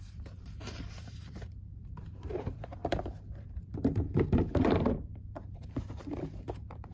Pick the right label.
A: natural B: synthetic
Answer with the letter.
B